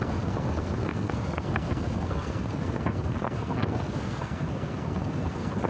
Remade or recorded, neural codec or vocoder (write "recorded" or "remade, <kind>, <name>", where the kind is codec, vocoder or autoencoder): remade, codec, SNAC